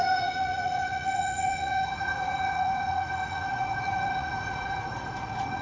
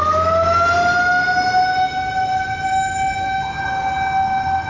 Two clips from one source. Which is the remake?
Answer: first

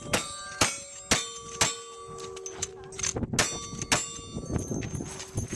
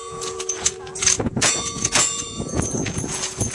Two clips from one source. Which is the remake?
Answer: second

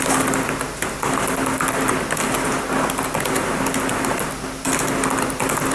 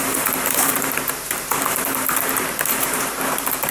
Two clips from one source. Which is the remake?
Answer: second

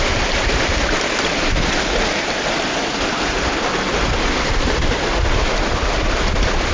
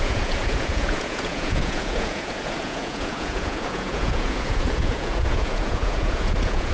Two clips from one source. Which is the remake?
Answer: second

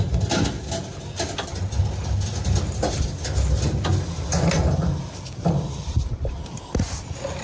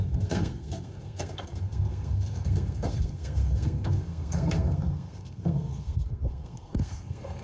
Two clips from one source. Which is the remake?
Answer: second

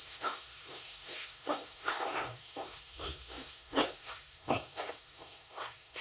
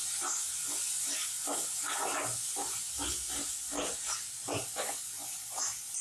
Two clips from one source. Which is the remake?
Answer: first